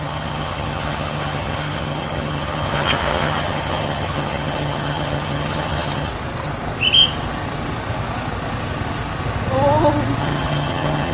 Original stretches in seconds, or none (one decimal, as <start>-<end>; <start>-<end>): 6.1-10.2